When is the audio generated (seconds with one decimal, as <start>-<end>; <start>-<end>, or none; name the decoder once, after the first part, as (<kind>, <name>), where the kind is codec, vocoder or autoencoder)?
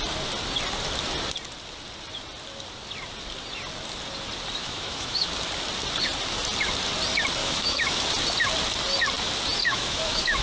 4.6-5.3 (autoencoder, DAC-VAE); 7.4-8.0; 9.6-10.4